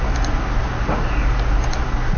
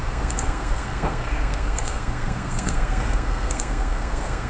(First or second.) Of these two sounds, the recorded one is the first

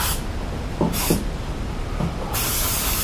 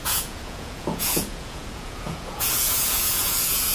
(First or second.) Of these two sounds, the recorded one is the first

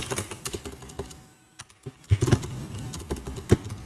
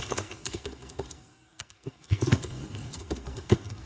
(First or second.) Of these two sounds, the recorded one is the first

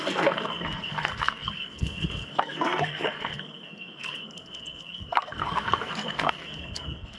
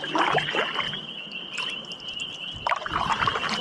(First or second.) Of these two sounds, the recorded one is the second